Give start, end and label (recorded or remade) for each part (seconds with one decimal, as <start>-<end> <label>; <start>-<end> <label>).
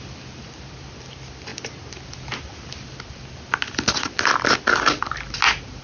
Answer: 0.0-5.8 recorded